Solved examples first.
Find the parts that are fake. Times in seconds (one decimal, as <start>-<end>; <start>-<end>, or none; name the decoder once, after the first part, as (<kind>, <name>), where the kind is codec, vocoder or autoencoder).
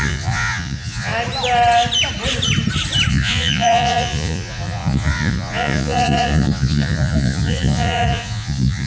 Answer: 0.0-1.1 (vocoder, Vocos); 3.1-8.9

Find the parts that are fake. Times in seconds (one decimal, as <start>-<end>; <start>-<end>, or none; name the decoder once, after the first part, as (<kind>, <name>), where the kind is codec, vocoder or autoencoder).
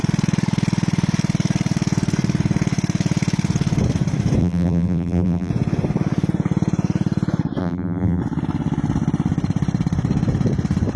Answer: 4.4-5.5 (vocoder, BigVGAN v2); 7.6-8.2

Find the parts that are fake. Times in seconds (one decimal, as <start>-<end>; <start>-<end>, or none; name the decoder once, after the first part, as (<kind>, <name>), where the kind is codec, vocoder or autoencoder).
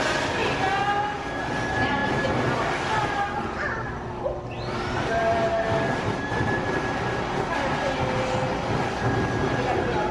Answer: none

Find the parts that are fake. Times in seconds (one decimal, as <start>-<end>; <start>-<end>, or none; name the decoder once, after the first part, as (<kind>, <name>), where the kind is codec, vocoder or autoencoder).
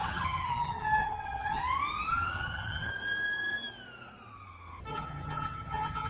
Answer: 0.0-1.6 (vocoder, HiFi-GAN); 2.1-2.9; 4.9-6.1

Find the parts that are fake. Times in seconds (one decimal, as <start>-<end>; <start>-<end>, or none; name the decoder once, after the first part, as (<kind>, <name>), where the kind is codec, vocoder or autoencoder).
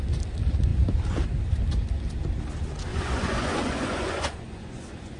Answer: 2.9-5.2 (vocoder, Vocos)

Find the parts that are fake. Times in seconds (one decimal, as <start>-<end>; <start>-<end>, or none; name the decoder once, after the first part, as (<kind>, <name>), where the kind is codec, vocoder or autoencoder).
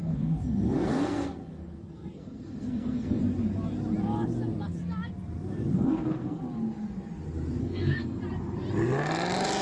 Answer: 0.0-3.2 (codec, SNAC); 5.7-6.4; 7.6-8.2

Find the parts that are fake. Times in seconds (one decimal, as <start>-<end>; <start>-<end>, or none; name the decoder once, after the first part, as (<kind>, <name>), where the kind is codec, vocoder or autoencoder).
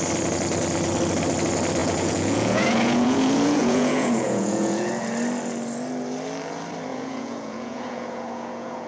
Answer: 1.8-4.9 (vocoder, Vocos); 6.9-8.9